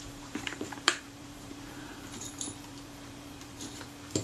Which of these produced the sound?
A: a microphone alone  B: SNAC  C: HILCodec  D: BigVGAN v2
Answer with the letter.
D